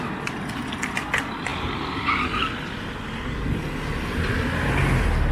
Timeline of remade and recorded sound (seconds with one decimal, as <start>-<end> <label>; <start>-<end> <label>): 0.0-5.3 recorded

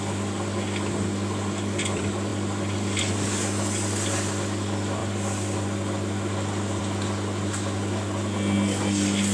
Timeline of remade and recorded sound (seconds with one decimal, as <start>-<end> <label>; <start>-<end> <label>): 0.0-5.0 recorded; 5.0-6.8 remade; 6.8-9.3 recorded

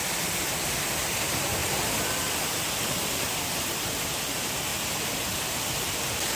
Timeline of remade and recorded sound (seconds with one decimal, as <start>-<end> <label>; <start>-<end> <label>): 0.0-1.6 recorded; 1.6-3.4 remade; 3.4-4.7 recorded; 4.7-5.9 remade; 5.9-6.4 recorded

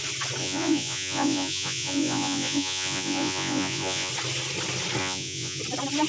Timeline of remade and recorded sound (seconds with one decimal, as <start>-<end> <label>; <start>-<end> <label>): 0.0-0.4 recorded; 0.4-4.1 remade; 4.1-5.0 recorded; 5.0-5.6 remade; 5.6-6.1 recorded